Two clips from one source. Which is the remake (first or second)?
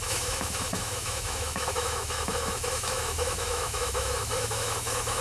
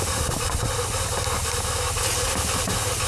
first